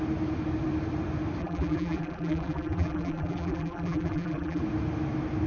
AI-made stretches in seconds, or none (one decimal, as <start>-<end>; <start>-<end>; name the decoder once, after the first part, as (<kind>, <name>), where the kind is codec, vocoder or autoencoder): 1.4-4.6 (vocoder, BigVGAN v2)